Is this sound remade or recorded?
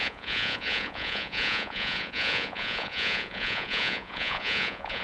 remade